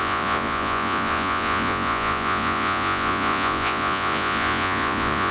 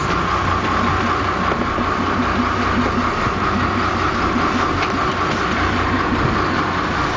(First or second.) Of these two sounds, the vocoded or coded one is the first